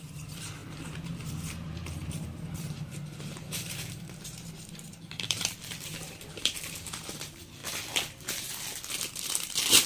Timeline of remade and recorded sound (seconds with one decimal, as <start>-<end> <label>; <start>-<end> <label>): 0.0-7.6 remade; 7.6-8.9 recorded; 8.9-9.9 remade